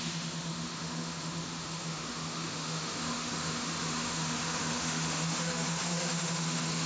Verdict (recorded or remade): remade